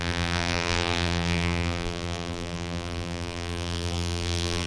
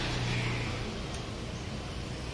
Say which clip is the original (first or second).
second